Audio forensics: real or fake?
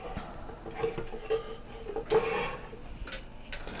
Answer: real